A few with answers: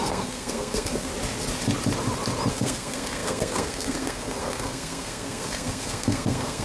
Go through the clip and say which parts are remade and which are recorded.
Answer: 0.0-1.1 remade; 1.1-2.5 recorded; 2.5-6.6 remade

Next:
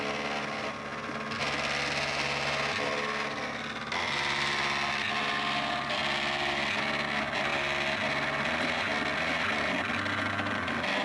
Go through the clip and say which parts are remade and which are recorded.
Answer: 0.0-11.0 recorded

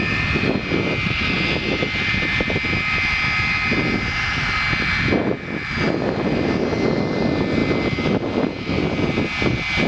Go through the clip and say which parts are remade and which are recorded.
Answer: 0.0-9.9 recorded